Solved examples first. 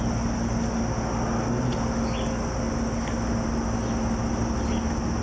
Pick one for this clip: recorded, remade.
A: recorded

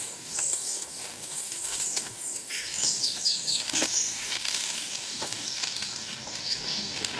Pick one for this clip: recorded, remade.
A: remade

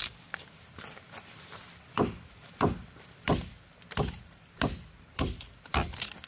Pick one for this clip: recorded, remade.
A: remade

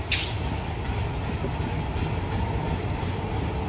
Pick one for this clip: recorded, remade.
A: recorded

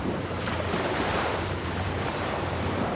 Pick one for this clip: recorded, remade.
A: remade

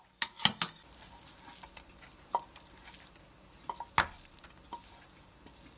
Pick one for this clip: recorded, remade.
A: recorded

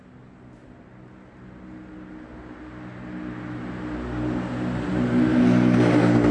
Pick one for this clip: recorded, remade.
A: recorded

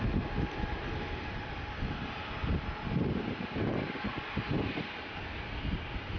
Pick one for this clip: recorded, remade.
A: recorded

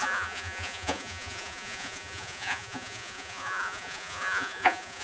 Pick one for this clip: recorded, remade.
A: remade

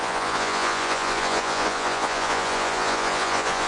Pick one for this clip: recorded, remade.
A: remade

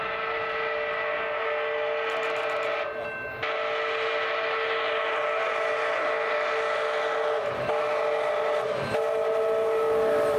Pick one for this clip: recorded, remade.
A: recorded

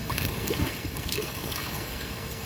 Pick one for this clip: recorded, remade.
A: remade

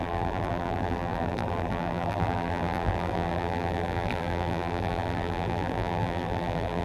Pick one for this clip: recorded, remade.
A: remade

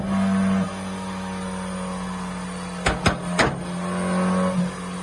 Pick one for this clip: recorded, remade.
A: recorded